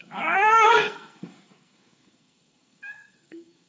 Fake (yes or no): yes